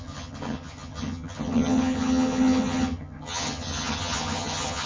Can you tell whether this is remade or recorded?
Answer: remade